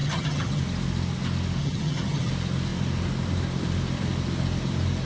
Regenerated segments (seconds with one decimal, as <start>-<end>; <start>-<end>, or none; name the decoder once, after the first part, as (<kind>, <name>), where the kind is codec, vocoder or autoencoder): 0.0-0.6 (vocoder, HiFi-GAN); 1.6-2.3